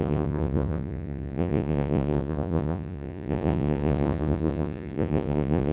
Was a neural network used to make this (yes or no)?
yes